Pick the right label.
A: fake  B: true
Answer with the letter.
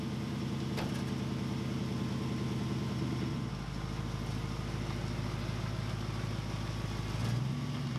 B